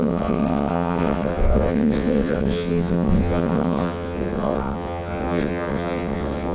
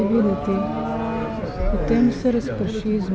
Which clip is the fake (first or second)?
first